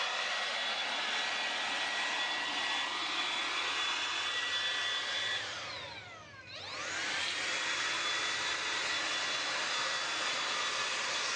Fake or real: real